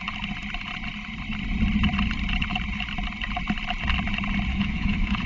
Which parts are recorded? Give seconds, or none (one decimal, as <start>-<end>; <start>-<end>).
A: 0.0-4.5